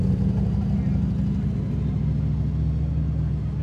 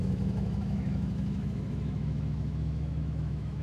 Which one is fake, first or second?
second